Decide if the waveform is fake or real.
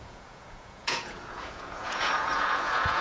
fake